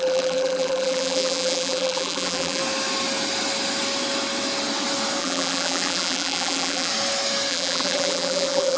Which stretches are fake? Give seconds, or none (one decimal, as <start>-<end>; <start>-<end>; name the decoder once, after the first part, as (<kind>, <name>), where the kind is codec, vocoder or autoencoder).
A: 0.0-2.6 (vocoder, BigVGAN v2); 5.2-6.9; 7.5-8.8